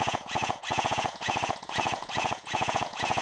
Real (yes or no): no